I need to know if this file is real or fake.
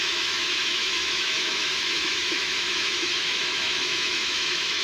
fake